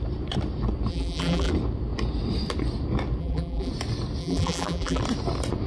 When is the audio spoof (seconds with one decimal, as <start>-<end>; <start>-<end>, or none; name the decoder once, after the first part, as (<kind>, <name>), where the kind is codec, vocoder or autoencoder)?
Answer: 0.9-1.5 (vocoder, BigVGAN v2); 3.2-3.7; 4.2-5.0